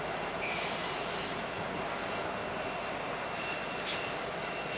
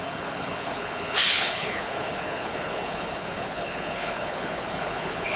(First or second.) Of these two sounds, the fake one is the second